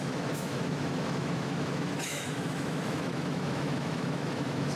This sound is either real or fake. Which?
fake